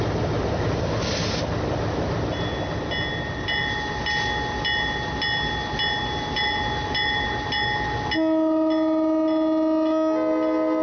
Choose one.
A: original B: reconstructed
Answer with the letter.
A